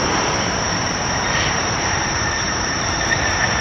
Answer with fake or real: fake